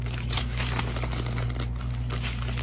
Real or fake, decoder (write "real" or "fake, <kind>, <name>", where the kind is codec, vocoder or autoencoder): real